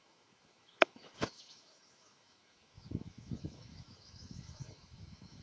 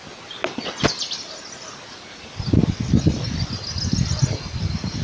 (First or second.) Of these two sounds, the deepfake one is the first